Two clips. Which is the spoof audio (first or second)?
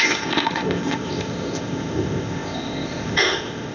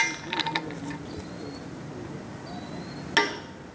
first